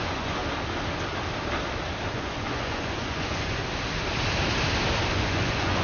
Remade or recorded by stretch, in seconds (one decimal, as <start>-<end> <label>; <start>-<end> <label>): 0.0-0.4 remade; 0.4-2.1 recorded; 2.1-3.6 remade; 3.6-5.1 recorded; 5.1-5.8 remade